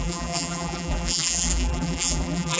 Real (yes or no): no